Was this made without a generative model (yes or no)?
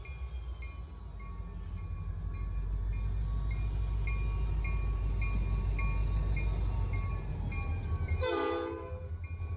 yes